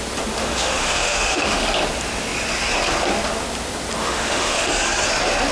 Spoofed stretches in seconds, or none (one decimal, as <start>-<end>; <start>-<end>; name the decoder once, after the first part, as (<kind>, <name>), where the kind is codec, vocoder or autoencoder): 0.4-1.6 (autoencoder, DAC-VAE); 4.0-4.7